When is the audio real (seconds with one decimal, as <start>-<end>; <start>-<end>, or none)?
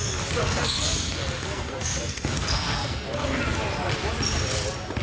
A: 0.0-0.4; 3.4-5.0